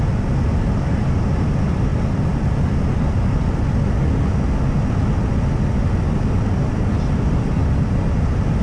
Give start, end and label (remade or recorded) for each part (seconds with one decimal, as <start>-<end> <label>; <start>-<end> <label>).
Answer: 0.0-8.6 recorded